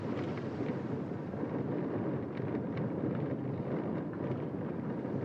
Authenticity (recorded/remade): recorded